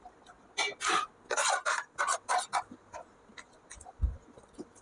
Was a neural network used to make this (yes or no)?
no